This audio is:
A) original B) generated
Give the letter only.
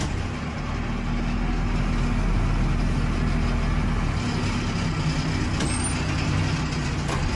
A